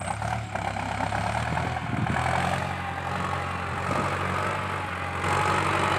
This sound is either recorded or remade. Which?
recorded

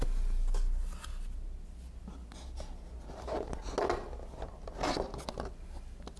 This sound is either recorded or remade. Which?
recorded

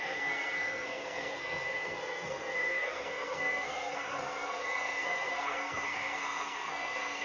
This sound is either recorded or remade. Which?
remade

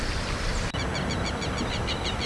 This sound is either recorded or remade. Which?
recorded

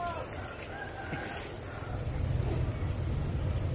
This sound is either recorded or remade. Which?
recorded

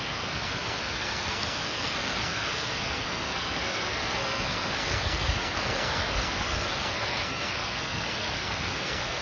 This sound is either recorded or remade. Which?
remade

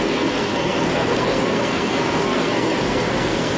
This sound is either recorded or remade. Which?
remade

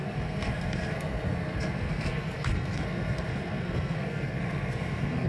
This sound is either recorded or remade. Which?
remade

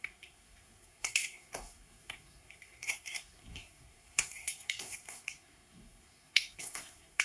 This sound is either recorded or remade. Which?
remade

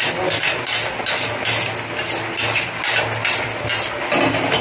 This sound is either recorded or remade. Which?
recorded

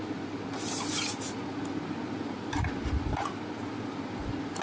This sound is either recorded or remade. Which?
recorded